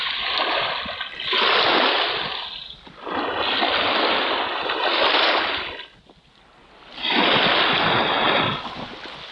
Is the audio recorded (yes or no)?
yes